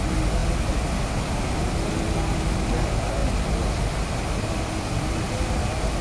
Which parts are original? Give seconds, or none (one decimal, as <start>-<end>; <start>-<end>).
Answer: 0.0-6.0